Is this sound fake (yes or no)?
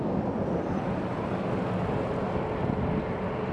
no